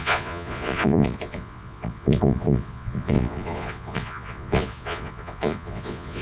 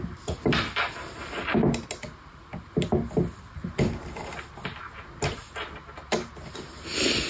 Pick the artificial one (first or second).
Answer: first